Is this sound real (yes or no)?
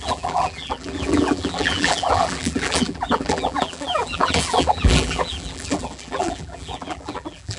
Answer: no